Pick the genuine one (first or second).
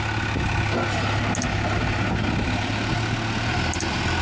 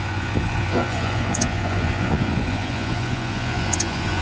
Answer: first